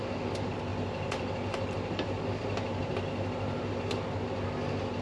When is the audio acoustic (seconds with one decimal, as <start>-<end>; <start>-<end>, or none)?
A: 0.0-0.7; 3.7-5.0